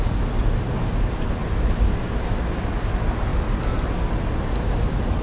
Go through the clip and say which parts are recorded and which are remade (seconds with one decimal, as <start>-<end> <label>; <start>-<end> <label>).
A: 0.0-5.2 recorded